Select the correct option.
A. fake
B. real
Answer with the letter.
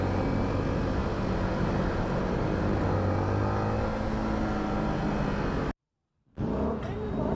B